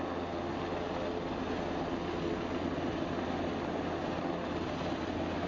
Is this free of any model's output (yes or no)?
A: yes